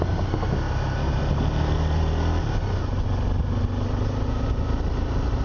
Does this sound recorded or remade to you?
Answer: recorded